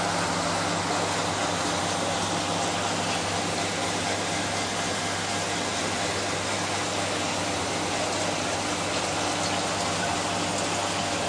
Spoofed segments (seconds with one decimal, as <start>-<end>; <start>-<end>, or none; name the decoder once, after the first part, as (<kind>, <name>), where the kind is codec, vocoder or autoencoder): none